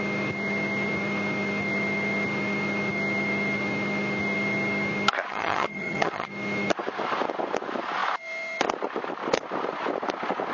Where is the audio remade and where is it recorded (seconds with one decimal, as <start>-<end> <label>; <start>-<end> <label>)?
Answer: 0.0-5.3 recorded; 5.3-6.3 remade; 6.3-10.5 recorded